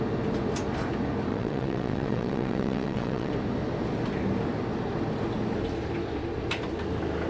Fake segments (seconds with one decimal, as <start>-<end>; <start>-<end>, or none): 1.3-3.3